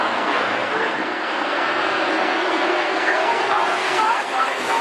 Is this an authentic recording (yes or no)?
no